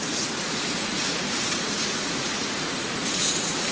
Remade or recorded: remade